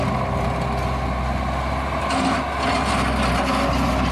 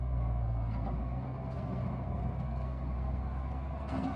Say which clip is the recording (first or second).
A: first